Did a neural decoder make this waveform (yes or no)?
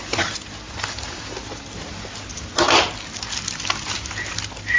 no